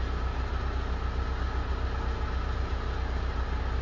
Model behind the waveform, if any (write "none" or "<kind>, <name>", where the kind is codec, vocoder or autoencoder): none